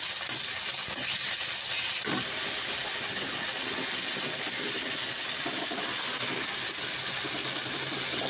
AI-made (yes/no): no